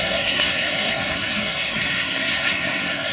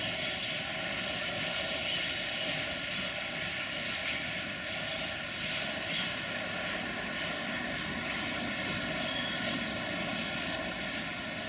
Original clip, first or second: second